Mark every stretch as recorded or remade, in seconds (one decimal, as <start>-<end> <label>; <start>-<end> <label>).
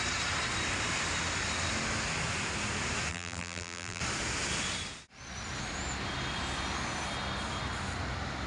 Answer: 0.0-3.1 recorded; 3.1-4.0 remade; 4.0-8.5 recorded